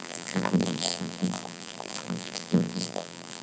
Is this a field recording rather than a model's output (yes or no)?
no